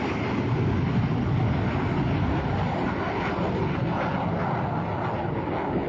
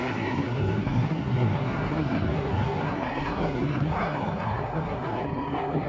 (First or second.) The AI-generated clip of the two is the second